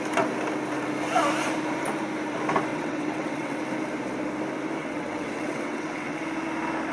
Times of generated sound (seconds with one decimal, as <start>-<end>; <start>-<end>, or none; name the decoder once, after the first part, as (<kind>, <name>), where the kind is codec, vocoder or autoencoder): 2.7-3.6 (vocoder, WaveNeXt); 4.8-6.2

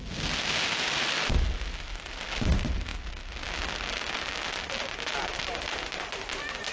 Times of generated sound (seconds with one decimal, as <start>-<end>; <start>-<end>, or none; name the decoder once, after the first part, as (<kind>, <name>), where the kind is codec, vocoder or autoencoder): none

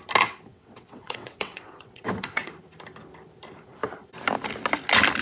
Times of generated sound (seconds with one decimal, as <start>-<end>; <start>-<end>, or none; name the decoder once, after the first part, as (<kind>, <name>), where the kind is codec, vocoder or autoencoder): 0.5-2.5 (vocoder, WaveNeXt)

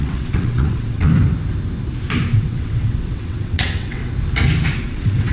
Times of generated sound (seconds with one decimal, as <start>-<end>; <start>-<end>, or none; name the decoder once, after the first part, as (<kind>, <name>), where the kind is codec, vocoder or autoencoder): 0.0-1.1 (vocoder, WaveNeXt); 2.3-4.0; 4.8-5.3